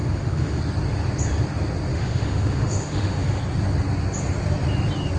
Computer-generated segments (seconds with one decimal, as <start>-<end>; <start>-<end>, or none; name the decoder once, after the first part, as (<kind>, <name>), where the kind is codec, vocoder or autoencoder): 0.0-0.6 (autoencoder, DAC-VAE); 1.9-3.4